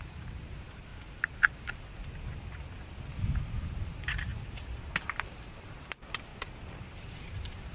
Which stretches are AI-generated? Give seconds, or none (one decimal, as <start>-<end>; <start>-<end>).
0.0-0.9; 3.4-4.3; 5.0-6.3; 7.0-7.7